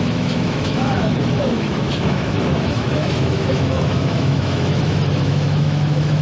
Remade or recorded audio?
remade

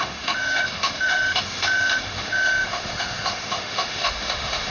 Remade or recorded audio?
remade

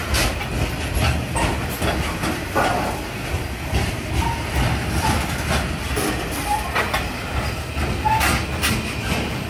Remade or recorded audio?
recorded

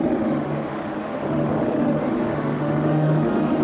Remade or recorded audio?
remade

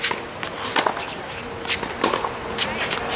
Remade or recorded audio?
recorded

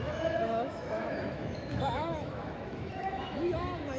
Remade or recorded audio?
remade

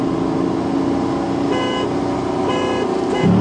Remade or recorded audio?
recorded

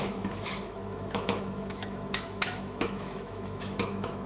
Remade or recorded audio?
remade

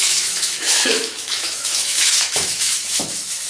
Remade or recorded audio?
remade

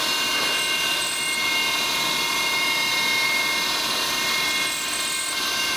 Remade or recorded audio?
recorded